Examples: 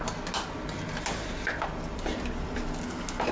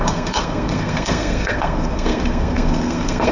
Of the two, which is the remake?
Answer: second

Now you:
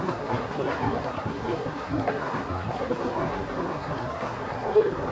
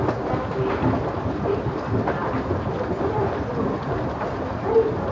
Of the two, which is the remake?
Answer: first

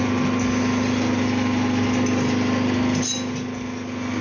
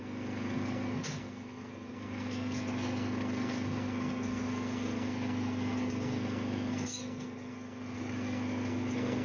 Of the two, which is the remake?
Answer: second